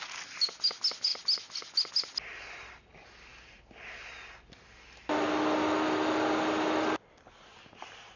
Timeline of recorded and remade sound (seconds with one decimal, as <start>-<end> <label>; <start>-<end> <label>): 0.0-8.2 recorded